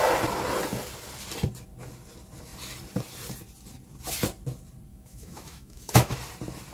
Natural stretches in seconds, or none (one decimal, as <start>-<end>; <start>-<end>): 0.0-4.9; 6.2-6.7